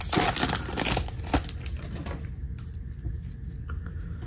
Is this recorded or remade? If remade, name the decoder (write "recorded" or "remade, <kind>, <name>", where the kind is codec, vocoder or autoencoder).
recorded